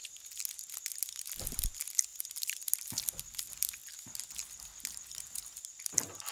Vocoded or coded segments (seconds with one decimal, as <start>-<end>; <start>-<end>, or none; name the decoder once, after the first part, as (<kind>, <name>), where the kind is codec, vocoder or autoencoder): none